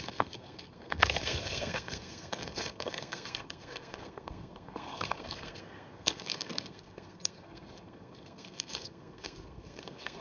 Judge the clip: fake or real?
fake